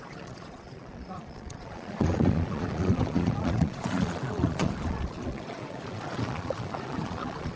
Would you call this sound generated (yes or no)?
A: yes